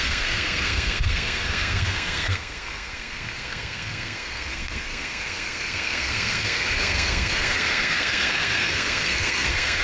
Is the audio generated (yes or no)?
yes